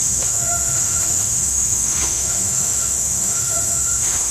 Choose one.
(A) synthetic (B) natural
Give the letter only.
A